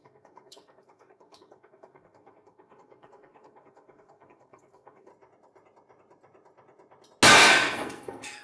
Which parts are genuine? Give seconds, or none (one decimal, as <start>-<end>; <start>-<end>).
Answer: 5.1-7.4